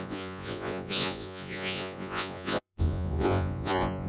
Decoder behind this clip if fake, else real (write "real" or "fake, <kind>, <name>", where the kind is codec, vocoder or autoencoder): fake, vocoder, Vocos